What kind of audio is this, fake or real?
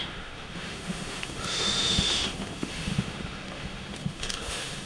fake